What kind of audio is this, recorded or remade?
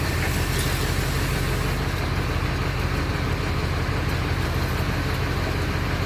recorded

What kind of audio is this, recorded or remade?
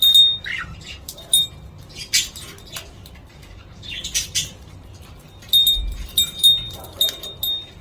recorded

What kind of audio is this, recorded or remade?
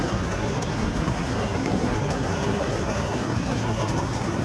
remade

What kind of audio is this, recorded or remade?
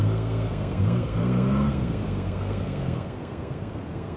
remade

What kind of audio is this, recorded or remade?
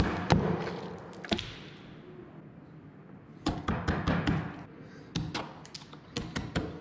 recorded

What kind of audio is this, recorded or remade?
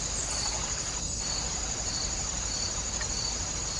recorded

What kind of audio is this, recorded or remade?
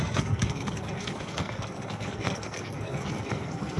remade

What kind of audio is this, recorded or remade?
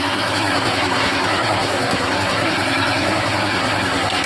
remade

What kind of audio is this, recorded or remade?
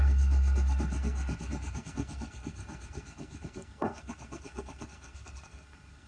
remade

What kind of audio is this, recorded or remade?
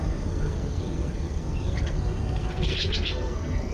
remade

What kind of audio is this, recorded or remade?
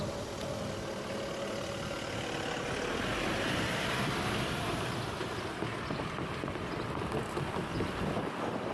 recorded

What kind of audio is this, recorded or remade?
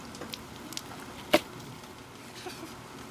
recorded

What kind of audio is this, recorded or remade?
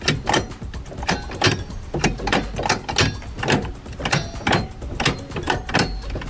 recorded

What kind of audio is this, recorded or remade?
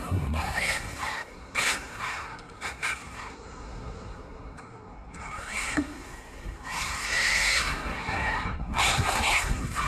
remade